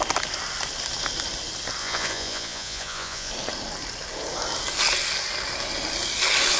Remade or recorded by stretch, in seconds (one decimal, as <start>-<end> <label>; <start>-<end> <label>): 0.0-1.8 recorded; 1.8-3.3 remade; 3.3-6.6 recorded